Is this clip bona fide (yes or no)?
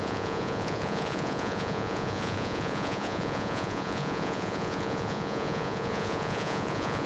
no